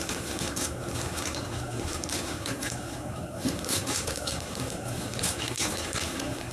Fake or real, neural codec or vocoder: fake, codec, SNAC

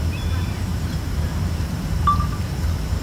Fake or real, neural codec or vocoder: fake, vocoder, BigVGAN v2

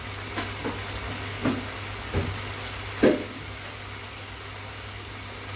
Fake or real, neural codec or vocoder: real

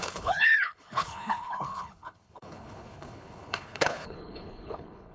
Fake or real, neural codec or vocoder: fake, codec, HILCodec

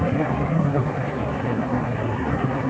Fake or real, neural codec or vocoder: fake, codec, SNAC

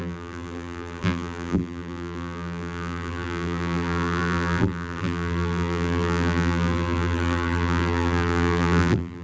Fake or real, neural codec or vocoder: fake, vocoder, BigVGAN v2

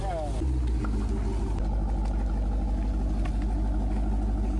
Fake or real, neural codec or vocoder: real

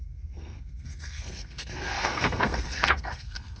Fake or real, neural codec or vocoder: fake, codec, SNAC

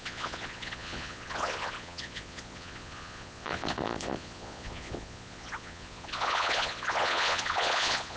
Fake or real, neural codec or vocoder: fake, vocoder, Vocos